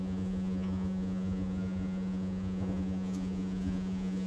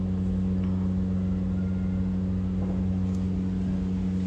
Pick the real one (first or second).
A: second